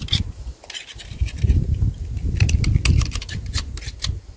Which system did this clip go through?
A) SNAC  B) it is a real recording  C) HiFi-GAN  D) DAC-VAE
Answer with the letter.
B